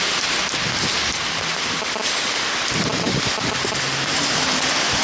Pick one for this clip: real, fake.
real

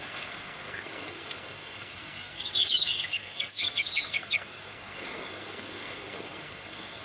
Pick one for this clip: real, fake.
fake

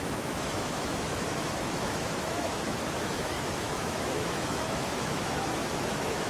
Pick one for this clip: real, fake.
fake